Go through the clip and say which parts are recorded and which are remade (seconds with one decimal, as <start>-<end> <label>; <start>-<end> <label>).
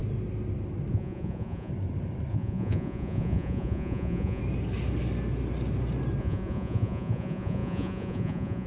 0.0-0.9 recorded; 0.9-1.7 remade; 1.7-2.3 recorded; 2.3-4.4 remade; 4.4-6.2 recorded; 6.2-8.7 remade